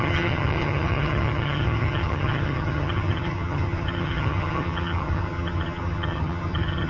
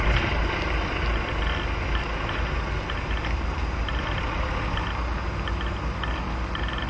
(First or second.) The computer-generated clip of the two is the first